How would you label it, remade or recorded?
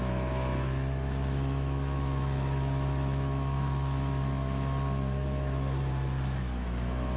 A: remade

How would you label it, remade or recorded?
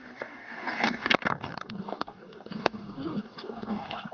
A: remade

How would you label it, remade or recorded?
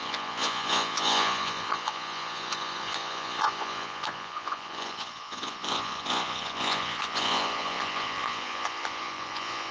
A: remade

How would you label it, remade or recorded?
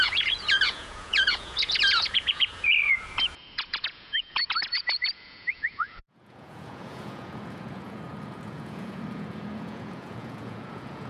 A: remade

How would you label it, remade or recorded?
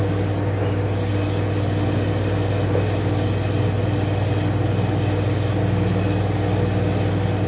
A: recorded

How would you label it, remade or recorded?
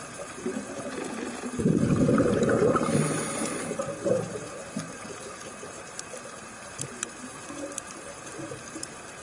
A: remade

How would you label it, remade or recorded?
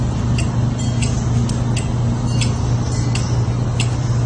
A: recorded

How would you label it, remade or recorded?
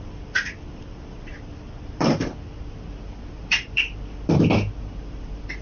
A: remade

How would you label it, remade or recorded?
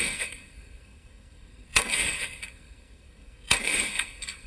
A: remade